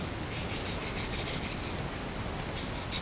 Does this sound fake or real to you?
real